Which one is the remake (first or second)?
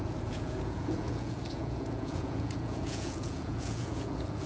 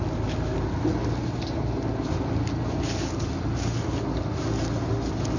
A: first